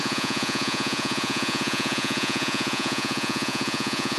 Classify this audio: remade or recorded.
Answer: remade